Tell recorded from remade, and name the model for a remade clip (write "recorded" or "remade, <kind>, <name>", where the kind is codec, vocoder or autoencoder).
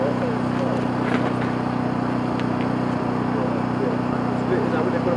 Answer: recorded